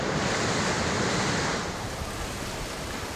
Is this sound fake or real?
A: real